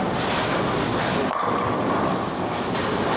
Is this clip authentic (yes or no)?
yes